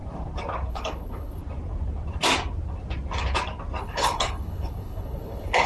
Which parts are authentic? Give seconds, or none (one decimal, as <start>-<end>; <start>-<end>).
0.0-0.7; 1.4-3.8